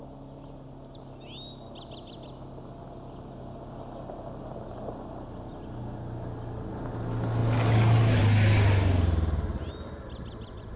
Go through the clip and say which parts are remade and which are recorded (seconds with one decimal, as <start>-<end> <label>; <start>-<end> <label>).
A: 0.0-10.8 recorded